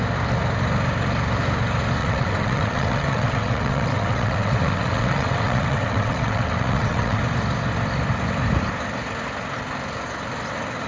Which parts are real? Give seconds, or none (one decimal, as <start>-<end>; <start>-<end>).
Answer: 0.0-2.0; 7.2-10.9